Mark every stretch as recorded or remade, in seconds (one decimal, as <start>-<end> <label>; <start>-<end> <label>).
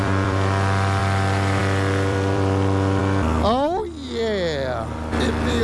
0.0-3.0 remade; 3.0-5.6 recorded